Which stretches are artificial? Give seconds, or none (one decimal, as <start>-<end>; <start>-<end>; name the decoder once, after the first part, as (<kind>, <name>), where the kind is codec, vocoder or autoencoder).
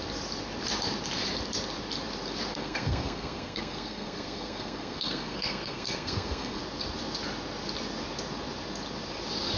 2.5-6.6 (codec, SNAC)